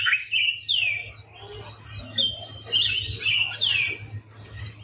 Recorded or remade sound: recorded